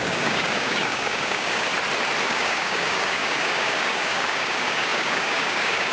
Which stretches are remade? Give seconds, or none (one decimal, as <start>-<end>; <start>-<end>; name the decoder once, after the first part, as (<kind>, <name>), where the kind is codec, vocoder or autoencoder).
0.0-1.7 (codec, DAC); 2.2-5.9